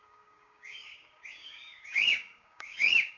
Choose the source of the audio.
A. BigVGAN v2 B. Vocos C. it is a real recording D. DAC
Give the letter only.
D